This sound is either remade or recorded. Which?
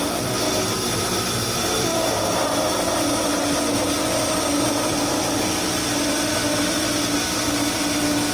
recorded